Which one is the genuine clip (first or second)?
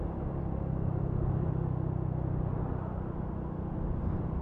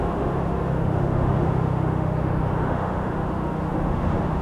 first